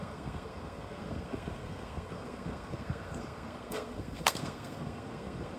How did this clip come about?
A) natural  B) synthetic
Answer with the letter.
B